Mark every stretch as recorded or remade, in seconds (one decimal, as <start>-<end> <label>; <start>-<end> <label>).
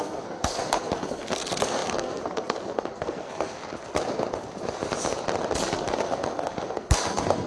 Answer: 0.0-3.6 remade; 3.6-5.7 recorded; 5.7-7.5 remade